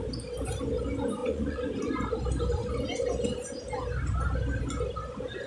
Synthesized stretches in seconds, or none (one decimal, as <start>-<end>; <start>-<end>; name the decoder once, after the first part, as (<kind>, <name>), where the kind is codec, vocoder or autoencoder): 1.2-1.7 (vocoder, Vocos)